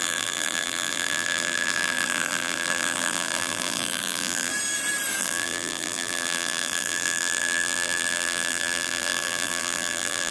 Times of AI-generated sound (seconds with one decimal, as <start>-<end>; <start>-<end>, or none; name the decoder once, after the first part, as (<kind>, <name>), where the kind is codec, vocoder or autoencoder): 0.0-4.5 (vocoder, BigVGAN v2); 5.2-10.3